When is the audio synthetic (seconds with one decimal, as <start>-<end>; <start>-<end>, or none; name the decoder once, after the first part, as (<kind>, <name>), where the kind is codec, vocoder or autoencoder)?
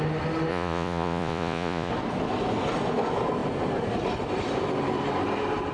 0.5-1.9 (vocoder, Vocos)